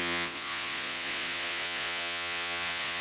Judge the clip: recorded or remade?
remade